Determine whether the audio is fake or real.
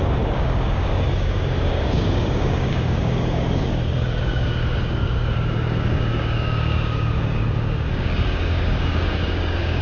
fake